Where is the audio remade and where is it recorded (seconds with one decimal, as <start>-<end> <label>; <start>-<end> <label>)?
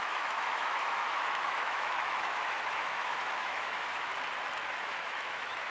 0.0-4.1 remade; 4.1-4.7 recorded; 4.7-5.7 remade